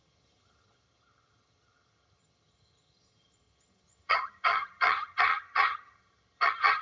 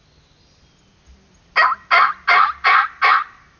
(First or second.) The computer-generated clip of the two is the first